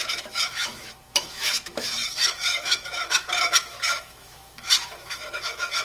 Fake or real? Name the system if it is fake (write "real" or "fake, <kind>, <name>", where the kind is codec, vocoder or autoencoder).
fake, autoencoder, DAC-VAE